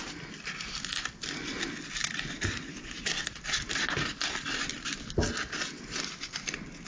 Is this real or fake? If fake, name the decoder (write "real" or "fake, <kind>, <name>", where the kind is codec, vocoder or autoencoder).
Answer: real